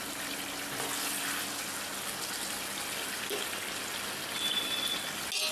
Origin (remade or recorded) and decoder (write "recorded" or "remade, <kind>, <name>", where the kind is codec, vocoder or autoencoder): recorded